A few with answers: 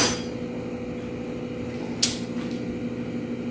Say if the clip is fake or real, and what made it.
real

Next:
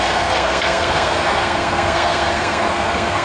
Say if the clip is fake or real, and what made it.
fake, codec, SNAC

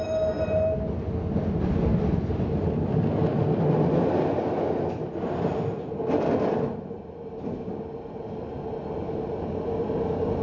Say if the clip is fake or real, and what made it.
real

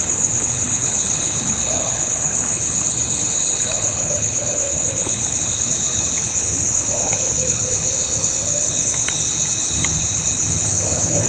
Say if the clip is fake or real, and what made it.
fake, codec, HILCodec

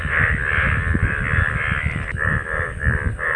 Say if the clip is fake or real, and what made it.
real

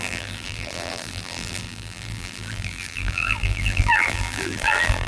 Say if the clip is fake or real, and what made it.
fake, vocoder, BigVGAN v2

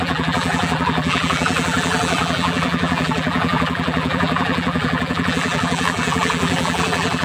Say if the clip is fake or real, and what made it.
fake, vocoder, BigVGAN v2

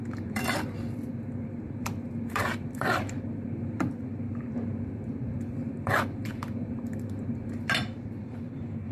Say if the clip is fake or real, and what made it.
fake, vocoder, BigVGAN v2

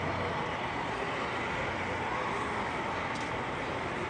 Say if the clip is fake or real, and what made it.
real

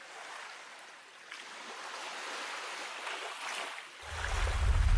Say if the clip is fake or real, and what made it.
real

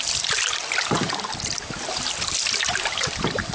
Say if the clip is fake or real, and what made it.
real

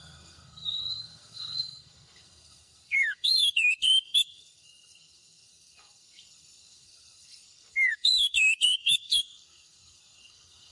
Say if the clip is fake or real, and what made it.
fake, codec, SNAC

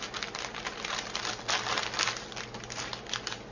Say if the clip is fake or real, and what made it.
real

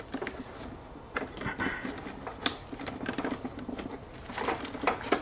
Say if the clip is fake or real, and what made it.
real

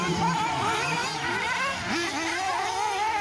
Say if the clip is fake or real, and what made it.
real